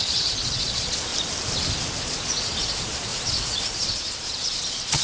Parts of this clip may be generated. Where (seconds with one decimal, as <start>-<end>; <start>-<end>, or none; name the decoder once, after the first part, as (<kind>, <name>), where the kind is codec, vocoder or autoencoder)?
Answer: 0.0-1.1 (vocoder, Vocos); 2.0-5.0